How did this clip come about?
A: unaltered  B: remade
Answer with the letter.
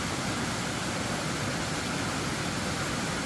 A